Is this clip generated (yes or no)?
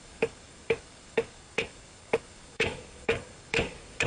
yes